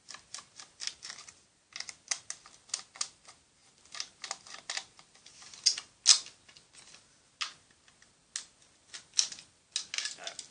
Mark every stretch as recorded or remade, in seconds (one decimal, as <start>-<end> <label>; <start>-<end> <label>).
0.0-10.5 recorded